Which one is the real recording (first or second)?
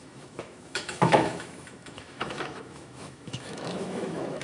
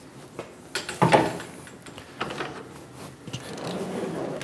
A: second